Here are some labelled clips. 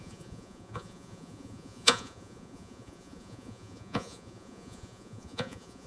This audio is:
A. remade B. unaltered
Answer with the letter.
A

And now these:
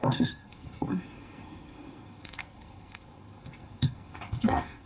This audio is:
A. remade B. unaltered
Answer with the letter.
A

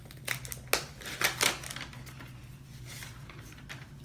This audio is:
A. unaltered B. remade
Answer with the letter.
A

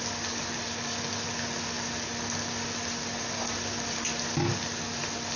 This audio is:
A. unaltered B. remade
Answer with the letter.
A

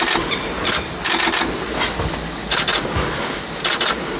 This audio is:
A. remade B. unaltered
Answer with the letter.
B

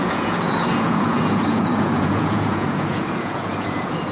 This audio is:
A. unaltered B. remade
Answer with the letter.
B